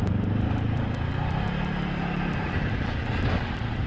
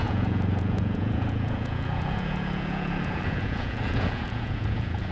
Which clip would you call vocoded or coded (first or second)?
second